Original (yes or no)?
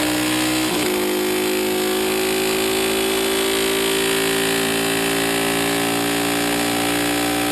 yes